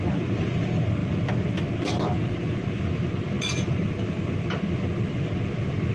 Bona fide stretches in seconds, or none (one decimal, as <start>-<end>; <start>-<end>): 0.0-5.9